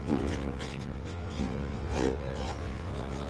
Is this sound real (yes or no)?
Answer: no